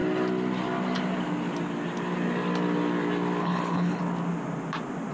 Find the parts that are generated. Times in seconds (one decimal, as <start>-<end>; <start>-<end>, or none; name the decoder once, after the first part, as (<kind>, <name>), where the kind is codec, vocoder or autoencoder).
3.4-4.0 (codec, HILCodec)